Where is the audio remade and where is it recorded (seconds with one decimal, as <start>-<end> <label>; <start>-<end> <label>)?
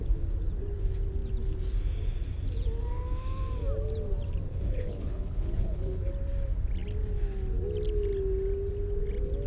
0.0-4.5 recorded; 4.5-6.1 remade; 6.1-9.5 recorded